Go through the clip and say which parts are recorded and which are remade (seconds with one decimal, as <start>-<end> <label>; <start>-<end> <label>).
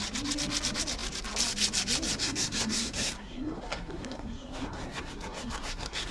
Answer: 0.0-2.2 recorded; 2.2-6.1 remade